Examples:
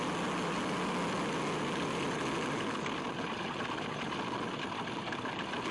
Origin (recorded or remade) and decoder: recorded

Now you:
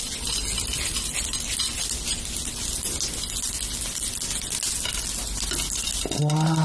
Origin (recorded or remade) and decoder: recorded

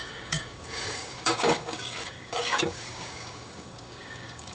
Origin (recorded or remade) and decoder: remade, codec, DAC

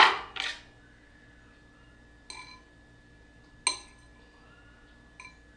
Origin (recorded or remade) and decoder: recorded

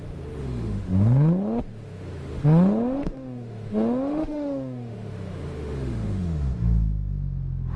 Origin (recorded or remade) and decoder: remade, autoencoder, DAC-VAE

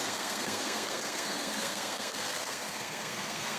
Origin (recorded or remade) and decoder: remade, codec, SNAC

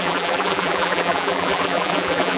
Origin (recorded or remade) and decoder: remade, vocoder, BigVGAN v2